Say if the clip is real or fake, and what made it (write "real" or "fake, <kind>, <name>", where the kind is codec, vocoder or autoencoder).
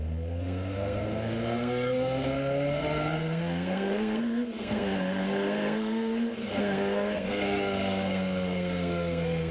fake, codec, SNAC